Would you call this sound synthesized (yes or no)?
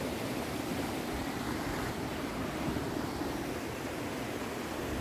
no